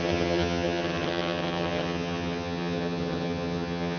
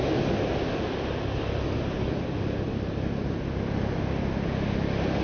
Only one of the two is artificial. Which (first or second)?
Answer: first